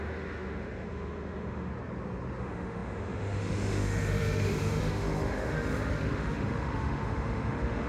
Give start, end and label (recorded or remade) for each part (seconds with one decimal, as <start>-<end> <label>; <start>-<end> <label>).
0.0-1.7 remade; 1.7-2.4 recorded; 2.4-7.9 remade